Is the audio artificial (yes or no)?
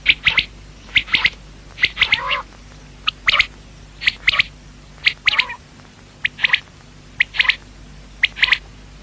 no